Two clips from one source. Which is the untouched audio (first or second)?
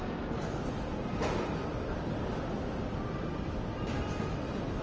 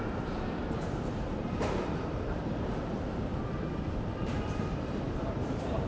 first